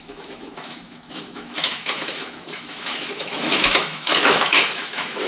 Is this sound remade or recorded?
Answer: remade